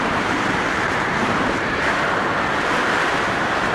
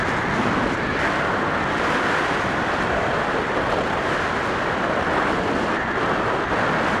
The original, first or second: second